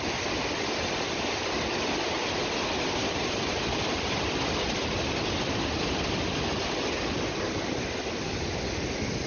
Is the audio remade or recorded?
recorded